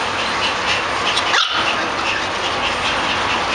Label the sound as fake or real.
real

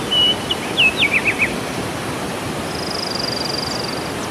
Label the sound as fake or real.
real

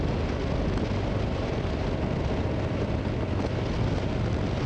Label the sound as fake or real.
real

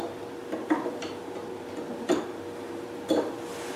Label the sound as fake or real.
real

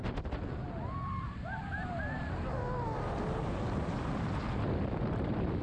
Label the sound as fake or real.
real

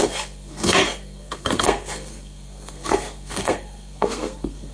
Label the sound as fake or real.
fake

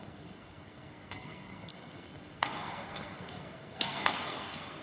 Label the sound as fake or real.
fake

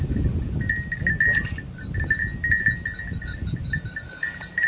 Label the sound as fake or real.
real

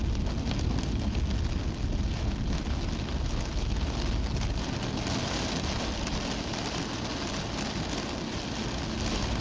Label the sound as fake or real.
real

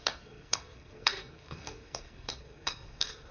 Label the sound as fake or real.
fake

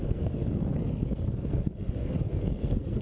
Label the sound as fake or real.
fake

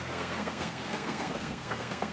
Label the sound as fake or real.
fake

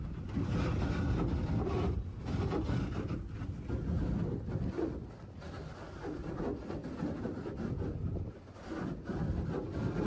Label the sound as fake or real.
real